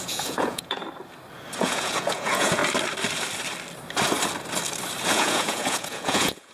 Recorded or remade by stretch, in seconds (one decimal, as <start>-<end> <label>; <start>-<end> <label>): 0.0-0.8 remade; 0.8-1.6 recorded; 1.6-2.6 remade; 2.6-5.1 recorded; 5.1-6.5 remade

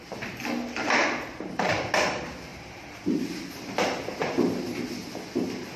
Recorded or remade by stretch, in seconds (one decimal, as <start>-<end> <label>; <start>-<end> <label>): 0.0-1.0 recorded; 1.0-1.9 remade; 1.9-2.5 recorded; 2.5-3.0 remade; 3.0-5.8 recorded

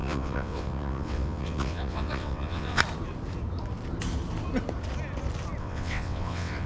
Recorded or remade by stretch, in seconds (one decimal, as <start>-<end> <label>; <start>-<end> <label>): 0.0-2.8 remade; 2.8-5.6 recorded; 5.6-6.7 remade

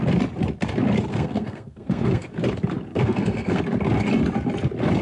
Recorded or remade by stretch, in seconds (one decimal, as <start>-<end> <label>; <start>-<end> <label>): 0.0-1.1 recorded; 1.1-2.3 remade; 2.3-2.9 recorded; 2.9-3.6 remade; 3.6-5.0 recorded

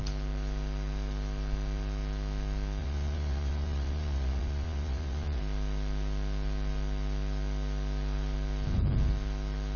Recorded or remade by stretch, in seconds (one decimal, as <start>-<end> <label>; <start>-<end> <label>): 0.0-2.8 recorded; 2.8-5.4 remade; 5.4-9.8 recorded